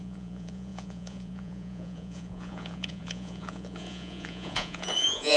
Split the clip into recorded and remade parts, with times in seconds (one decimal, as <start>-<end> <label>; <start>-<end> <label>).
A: 0.0-5.4 remade